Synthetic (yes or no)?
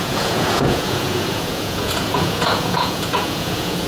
yes